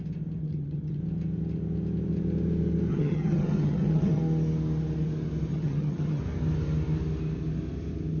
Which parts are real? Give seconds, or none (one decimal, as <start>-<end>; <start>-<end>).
0.0-0.4; 1.0-2.9; 4.2-5.5; 6.2-8.2